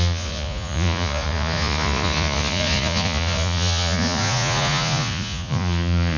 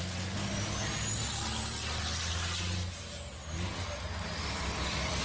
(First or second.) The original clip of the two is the second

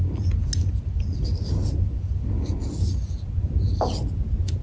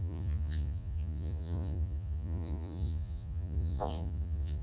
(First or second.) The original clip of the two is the first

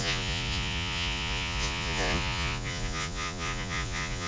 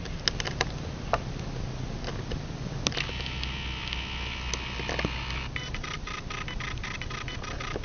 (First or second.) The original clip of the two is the second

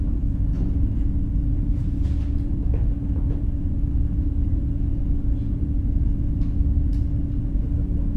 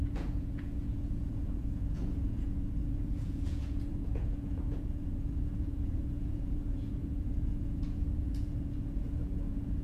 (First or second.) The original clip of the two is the first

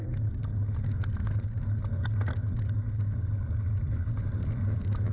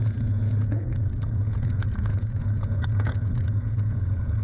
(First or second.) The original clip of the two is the first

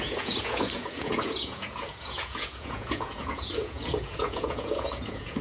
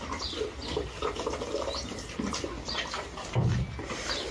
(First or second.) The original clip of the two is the second